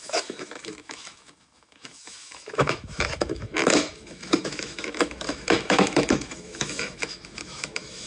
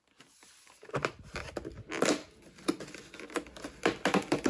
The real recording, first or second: second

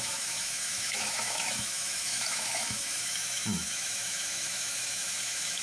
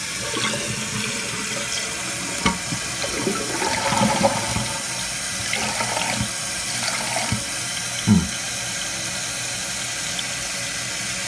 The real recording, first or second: second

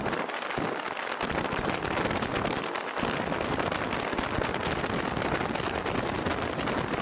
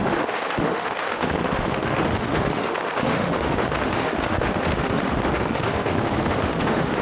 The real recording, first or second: first